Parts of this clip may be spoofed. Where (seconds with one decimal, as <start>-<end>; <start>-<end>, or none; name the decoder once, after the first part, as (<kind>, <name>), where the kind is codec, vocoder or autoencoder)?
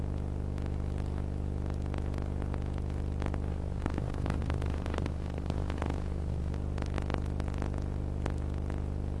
3.5-6.5 (codec, SNAC)